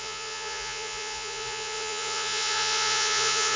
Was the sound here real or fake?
fake